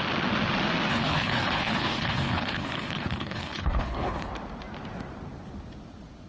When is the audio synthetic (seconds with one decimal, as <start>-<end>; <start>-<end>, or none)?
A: 0.9-4.3